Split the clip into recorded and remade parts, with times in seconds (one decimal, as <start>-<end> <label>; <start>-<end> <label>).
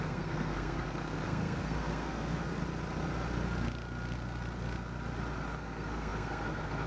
0.0-2.6 remade; 2.6-5.6 recorded; 5.6-6.9 remade